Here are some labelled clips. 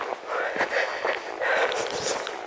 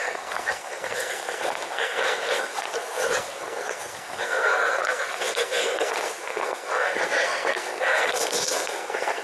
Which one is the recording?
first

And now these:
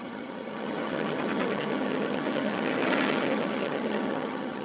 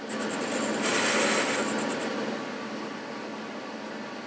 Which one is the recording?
second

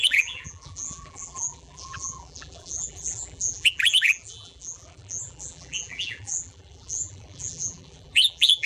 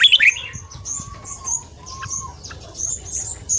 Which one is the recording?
second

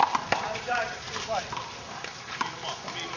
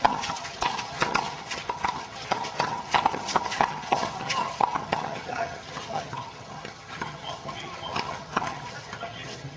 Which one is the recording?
first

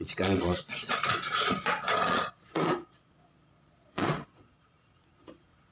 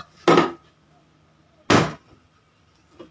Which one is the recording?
second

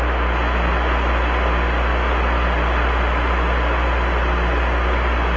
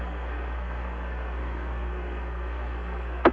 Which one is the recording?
first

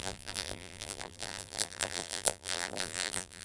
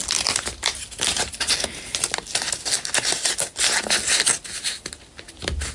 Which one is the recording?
second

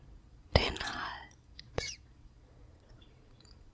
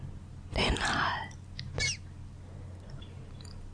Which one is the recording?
second